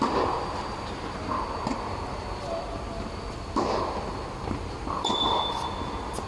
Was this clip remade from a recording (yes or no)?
no